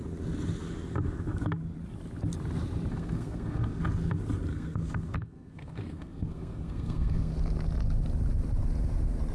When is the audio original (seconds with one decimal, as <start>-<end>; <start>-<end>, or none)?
0.0-2.9; 3.8-4.5; 7.3-9.3